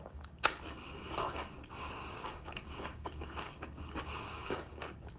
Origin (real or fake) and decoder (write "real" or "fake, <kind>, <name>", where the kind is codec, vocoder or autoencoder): fake, codec, DAC